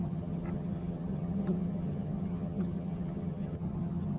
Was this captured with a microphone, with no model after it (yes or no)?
no